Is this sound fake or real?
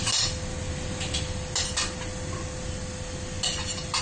real